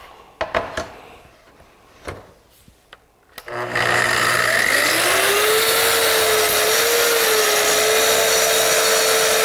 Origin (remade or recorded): recorded